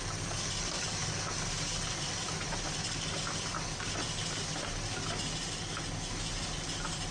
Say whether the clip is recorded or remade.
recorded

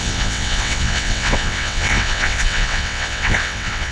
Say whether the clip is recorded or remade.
remade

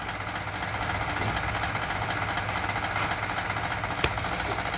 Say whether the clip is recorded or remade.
recorded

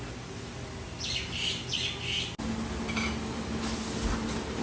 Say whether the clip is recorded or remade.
recorded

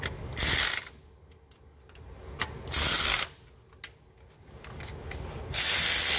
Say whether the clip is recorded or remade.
recorded